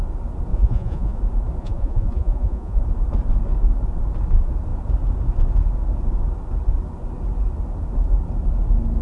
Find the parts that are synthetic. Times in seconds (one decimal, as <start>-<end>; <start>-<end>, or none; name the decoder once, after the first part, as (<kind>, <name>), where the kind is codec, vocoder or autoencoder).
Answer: 0.5-1.2 (vocoder, Vocos); 1.6-2.8